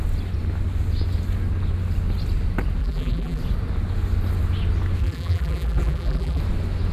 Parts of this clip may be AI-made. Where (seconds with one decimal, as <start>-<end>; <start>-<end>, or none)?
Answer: 2.8-3.4; 5.0-6.4